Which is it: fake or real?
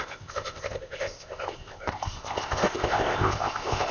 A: fake